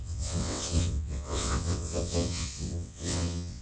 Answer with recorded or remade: remade